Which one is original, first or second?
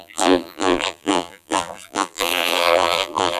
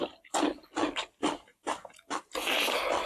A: second